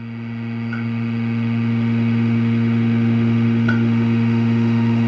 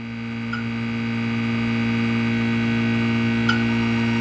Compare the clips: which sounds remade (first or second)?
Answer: first